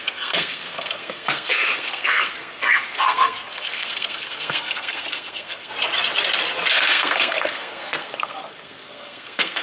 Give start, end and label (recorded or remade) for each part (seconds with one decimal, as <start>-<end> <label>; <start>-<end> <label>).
0.0-5.7 remade; 5.7-6.7 recorded; 6.7-9.6 remade